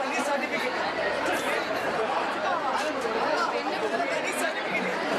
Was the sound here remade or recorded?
recorded